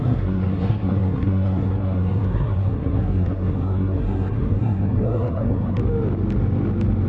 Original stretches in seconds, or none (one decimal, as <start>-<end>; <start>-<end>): 5.8-7.1